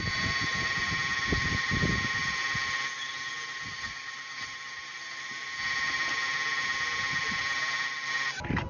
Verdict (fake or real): fake